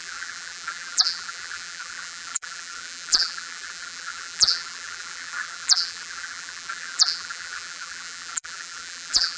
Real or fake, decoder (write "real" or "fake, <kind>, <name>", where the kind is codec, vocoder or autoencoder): fake, vocoder, BigVGAN v2